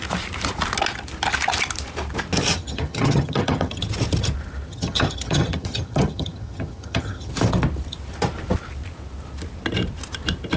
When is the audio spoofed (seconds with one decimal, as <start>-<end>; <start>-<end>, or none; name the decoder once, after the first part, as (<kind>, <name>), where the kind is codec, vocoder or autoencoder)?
2.5-3.8 (vocoder, HiFi-GAN); 4.7-7.3